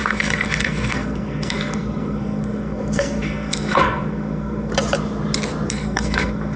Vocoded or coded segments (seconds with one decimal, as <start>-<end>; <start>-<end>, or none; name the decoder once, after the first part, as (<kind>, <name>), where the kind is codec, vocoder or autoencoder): 0.0-4.7 (codec, SNAC); 5.7-6.6